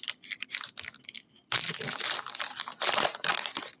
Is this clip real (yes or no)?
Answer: no